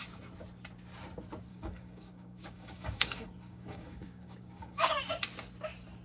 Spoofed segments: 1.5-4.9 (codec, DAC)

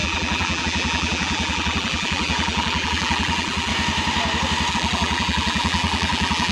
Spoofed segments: 0.0-3.7 (vocoder, BigVGAN v2); 4.7-6.5

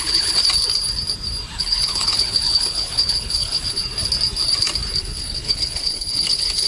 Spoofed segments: 0.0-0.4 (codec, HILCodec); 1.6-3.8; 5.0-6.7

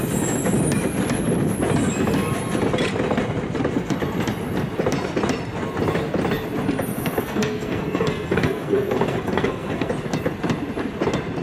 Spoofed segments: 6.9-9.9 (codec, SNAC)

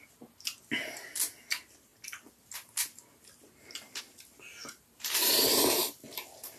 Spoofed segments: 4.6-5.8 (vocoder, BigVGAN v2)

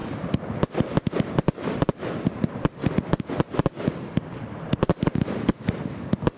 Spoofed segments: none